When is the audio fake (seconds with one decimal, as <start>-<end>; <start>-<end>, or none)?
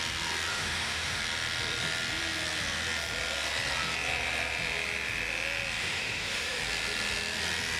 0.5-1.2; 5.8-6.6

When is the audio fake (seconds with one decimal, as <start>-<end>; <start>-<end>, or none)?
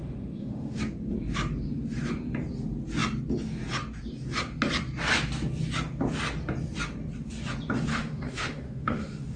0.0-0.8; 7.9-9.4